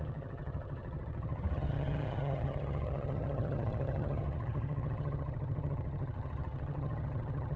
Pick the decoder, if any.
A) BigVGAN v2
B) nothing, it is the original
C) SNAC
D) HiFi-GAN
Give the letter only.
D